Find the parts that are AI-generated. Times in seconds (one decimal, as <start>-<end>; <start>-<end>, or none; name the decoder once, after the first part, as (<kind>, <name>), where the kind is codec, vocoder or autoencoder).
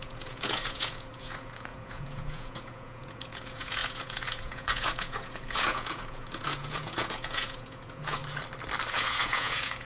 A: 0.0-8.2 (vocoder, Vocos); 8.9-9.8